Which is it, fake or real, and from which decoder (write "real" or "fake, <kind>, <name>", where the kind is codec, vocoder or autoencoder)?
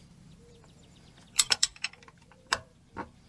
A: fake, vocoder, BigVGAN v2